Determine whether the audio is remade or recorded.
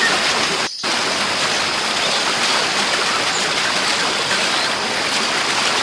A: recorded